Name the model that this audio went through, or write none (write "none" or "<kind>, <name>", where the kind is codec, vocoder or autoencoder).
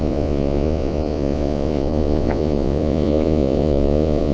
vocoder, Vocos